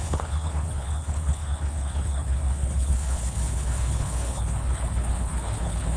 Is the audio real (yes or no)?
no